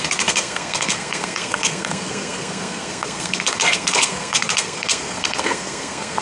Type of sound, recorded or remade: remade